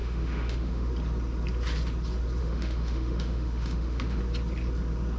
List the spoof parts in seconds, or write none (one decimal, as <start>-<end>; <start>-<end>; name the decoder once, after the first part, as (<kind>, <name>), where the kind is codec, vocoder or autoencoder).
0.0-0.9 (autoencoder, DAC-VAE); 2.4-4.2